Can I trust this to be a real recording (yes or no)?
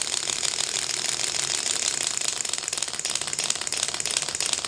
yes